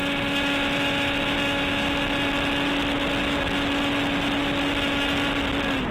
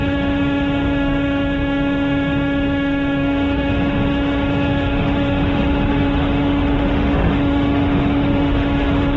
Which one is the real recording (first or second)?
first